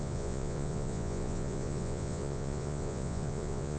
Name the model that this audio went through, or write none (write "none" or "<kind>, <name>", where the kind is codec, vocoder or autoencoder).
vocoder, Vocos